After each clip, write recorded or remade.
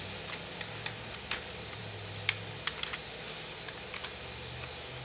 recorded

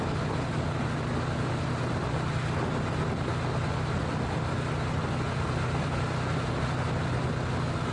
recorded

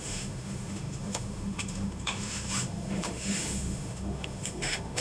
remade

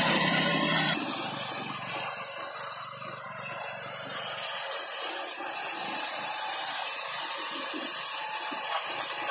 remade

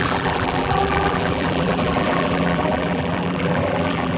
remade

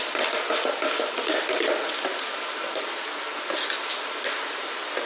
recorded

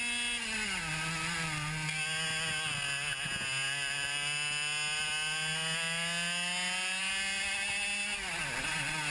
recorded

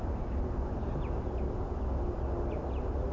recorded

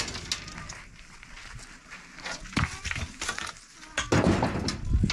recorded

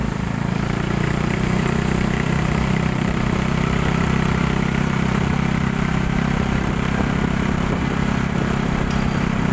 remade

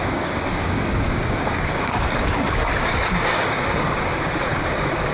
remade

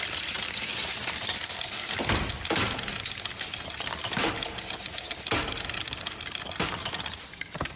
recorded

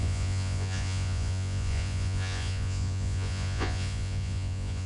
remade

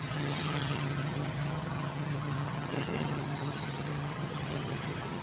remade